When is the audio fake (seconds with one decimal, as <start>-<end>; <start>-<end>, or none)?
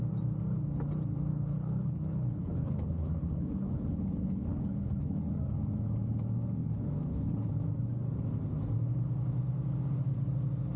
1.3-5.3; 6.6-7.5